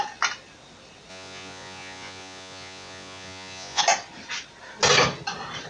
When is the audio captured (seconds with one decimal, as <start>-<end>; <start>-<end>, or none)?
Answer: 0.0-1.1; 3.8-5.7